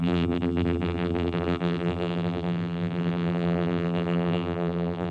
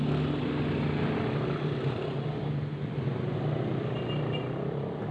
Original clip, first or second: second